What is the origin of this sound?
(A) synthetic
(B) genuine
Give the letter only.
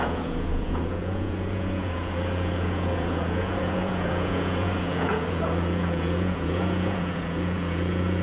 A